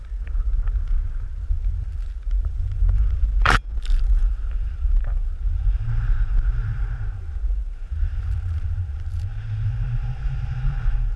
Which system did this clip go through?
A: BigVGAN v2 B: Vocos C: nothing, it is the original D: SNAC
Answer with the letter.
A